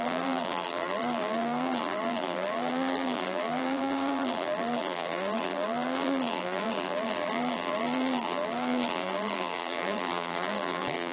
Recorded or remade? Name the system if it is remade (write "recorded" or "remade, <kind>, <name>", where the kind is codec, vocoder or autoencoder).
remade, vocoder, BigVGAN v2